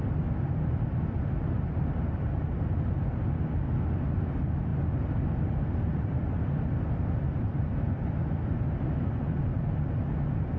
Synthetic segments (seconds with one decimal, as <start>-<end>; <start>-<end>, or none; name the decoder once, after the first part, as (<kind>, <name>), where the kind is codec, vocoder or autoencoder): none